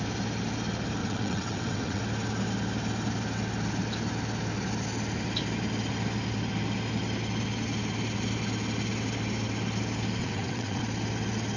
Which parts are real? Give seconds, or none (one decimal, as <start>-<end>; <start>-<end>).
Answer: 0.0-1.0; 2.0-10.2; 10.8-11.6